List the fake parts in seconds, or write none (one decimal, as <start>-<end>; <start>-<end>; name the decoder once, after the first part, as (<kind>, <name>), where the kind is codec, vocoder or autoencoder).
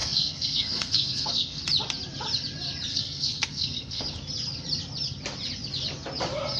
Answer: 0.0-1.6 (codec, SNAC); 2.9-4.0